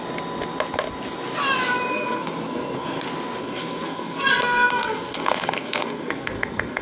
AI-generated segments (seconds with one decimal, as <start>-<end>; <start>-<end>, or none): 1.9-3.0; 3.4-6.8